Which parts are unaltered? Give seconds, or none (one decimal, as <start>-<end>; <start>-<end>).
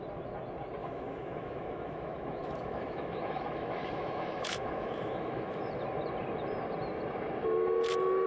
0.0-0.8; 5.7-8.3